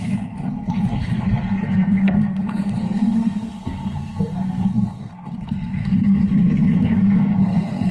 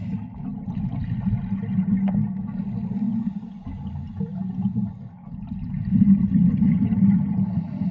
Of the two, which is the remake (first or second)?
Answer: first